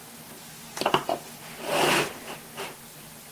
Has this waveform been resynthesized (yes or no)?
no